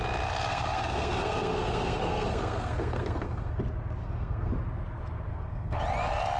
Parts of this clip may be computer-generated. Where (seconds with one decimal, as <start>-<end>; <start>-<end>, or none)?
0.5-3.6; 4.0-4.5; 5.3-5.8